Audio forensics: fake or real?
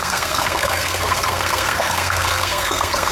fake